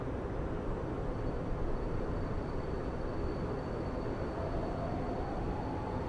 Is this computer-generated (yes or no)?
no